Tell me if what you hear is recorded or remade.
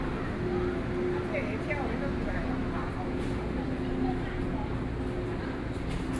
recorded